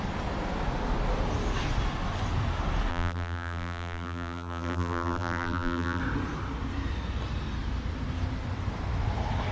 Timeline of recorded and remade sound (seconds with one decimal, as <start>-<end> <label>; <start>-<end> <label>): 0.0-2.9 recorded; 2.9-6.0 remade; 6.0-9.5 recorded